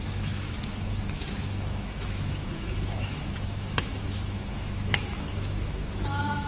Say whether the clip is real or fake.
fake